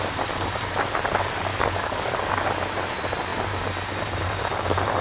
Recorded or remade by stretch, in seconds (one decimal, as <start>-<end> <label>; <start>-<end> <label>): 0.0-1.5 recorded; 1.5-2.3 remade; 2.3-5.0 recorded